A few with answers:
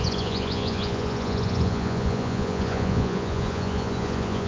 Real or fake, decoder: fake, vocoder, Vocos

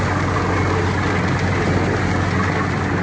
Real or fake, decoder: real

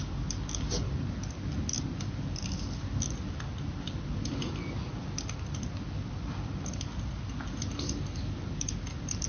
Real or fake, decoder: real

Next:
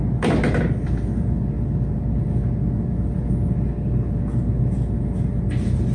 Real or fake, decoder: real